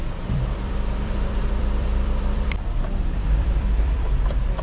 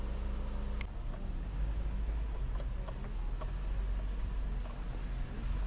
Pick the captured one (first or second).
second